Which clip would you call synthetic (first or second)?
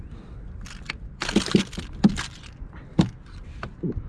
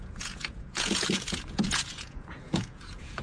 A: second